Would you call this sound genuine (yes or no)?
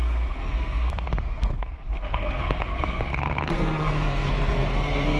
no